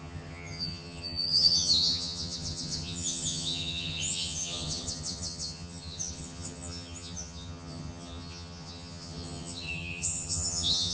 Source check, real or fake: fake